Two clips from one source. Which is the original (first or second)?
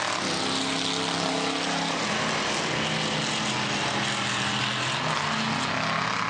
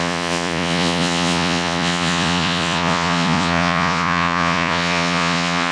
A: first